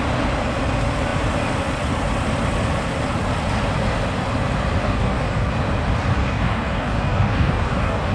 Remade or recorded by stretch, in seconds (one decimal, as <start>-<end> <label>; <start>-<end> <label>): 0.0-4.8 recorded; 4.8-5.5 remade; 5.5-6.2 recorded; 6.2-8.1 remade

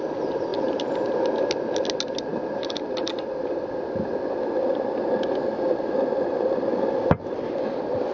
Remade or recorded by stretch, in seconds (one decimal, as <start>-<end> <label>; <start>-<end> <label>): 0.0-8.1 recorded

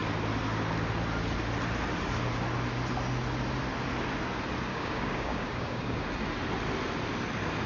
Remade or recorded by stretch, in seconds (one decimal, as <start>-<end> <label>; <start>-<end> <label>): 0.0-4.7 recorded; 4.7-6.0 remade; 6.0-7.7 recorded

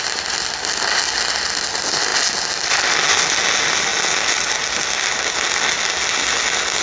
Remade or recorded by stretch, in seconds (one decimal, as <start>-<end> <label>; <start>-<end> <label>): 0.0-6.8 recorded

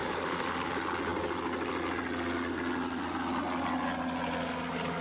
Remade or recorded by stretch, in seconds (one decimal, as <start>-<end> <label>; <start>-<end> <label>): 0.0-0.7 remade; 0.7-5.0 recorded

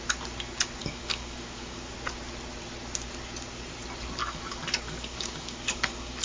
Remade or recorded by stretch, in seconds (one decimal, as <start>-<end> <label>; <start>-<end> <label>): 0.0-0.8 recorded; 0.8-1.9 remade; 1.9-4.2 recorded; 4.2-6.2 remade

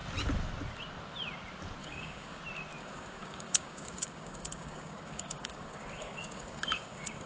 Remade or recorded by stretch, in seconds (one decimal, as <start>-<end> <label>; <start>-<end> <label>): 0.0-1.8 recorded; 1.8-2.4 remade; 2.4-2.8 recorded; 2.8-7.3 remade